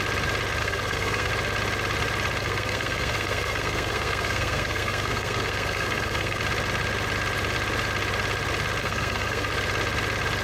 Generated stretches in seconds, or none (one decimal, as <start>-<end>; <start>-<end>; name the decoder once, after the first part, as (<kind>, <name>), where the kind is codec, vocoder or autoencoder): 0.6-1.3 (codec, SNAC); 2.4-6.4; 8.8-9.5